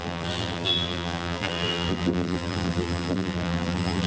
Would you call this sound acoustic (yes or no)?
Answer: no